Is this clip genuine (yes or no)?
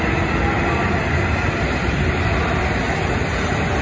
yes